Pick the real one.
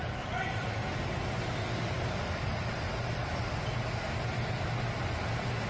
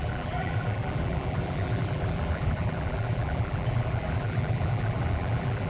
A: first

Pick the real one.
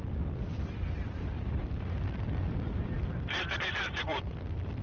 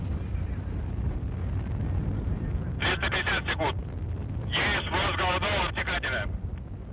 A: second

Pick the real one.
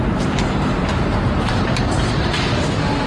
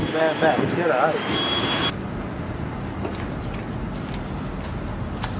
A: second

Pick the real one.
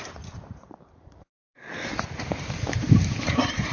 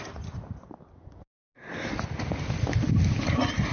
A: second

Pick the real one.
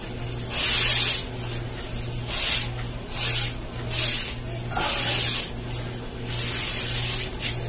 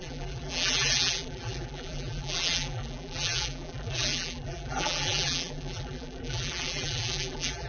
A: first